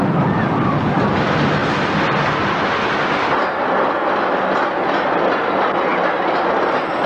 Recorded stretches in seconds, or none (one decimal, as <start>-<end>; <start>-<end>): 0.0-7.1